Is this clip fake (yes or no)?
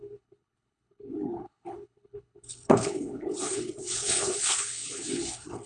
yes